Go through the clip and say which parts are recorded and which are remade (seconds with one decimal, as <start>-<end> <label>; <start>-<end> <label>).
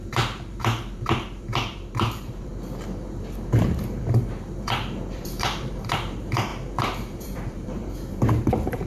0.0-2.5 remade; 2.5-4.0 recorded; 4.0-8.9 remade